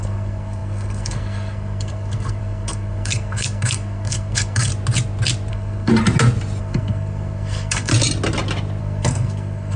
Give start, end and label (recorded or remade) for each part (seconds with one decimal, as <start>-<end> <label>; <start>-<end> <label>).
0.0-4.7 remade; 4.7-5.5 recorded; 5.5-5.9 remade; 5.9-6.6 recorded; 6.6-7.9 remade; 7.9-8.8 recorded; 8.8-9.8 remade